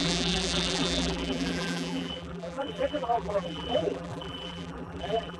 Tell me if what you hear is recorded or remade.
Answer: remade